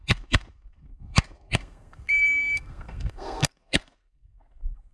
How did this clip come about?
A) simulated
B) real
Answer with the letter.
A